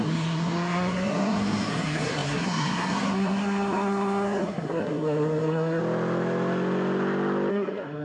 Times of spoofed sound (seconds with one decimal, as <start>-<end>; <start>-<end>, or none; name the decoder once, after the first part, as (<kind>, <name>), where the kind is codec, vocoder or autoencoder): 0.0-5.8 (codec, SNAC); 7.5-8.0